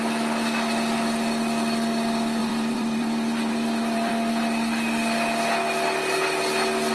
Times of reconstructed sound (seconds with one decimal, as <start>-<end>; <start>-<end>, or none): 2.4-4.1